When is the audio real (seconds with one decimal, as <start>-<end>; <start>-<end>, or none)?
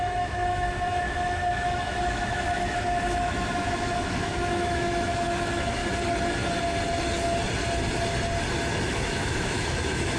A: 5.8-8.9